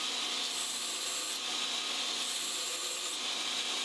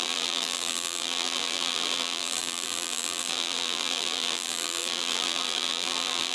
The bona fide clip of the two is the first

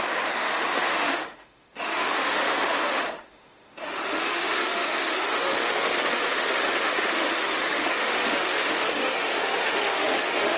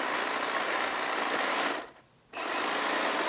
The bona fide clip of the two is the second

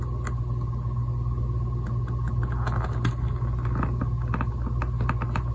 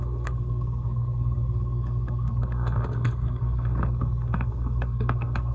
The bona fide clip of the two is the first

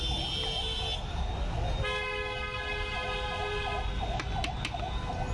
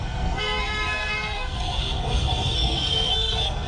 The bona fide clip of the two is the first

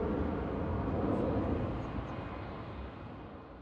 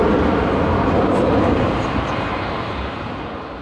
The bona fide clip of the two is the first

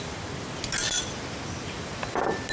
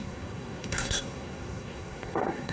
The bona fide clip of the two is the first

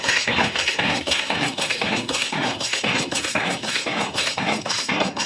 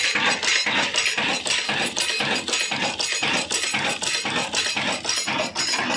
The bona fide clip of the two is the second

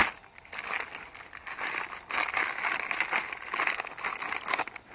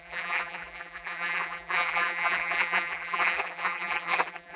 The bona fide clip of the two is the first